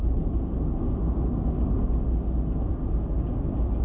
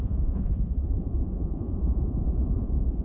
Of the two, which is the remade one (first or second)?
second